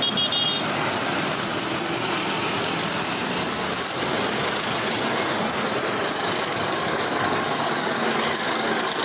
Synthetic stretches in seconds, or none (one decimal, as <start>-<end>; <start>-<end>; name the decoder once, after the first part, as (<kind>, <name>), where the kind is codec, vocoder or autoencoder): 6.5-9.0 (codec, DAC)